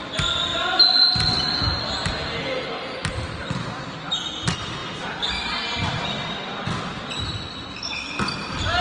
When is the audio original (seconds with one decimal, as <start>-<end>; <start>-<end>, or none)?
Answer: 0.0-0.5; 1.8-8.8

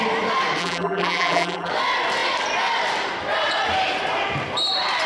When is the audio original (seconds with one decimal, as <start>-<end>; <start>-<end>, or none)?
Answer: 0.0-0.6; 1.7-5.1